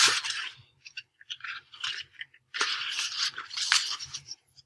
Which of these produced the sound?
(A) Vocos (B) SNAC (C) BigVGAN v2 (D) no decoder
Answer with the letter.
C